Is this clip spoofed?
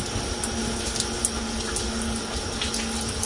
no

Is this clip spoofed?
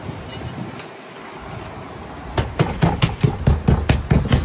no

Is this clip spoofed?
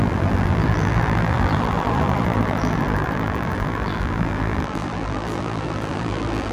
yes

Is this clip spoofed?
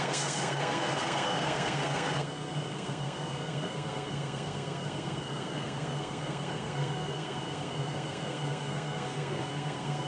yes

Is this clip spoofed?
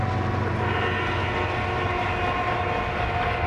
no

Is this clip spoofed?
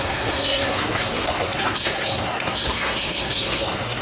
yes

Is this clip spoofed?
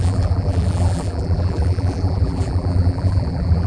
yes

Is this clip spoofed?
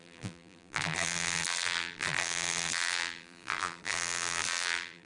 yes